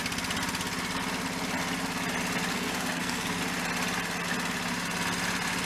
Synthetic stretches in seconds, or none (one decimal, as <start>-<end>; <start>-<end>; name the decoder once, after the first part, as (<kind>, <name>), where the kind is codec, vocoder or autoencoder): 2.5-3.4 (codec, SNAC)